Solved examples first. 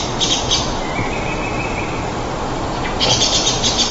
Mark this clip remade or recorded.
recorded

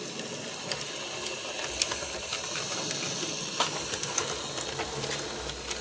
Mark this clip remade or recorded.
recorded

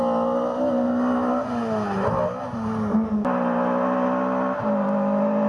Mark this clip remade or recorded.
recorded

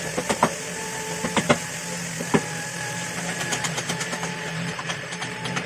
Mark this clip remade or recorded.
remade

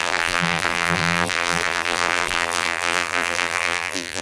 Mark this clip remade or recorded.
remade